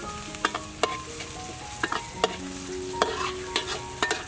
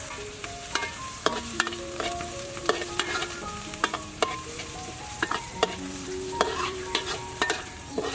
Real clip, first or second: first